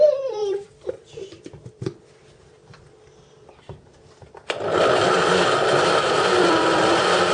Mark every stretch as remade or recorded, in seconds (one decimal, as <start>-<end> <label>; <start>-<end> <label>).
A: 0.0-7.3 remade